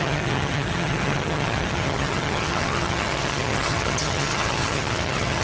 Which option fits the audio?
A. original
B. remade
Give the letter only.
B